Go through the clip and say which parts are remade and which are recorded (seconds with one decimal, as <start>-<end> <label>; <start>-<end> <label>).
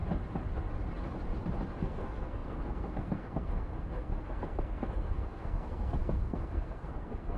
0.0-1.8 recorded; 1.8-7.4 remade